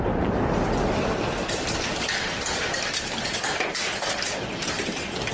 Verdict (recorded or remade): recorded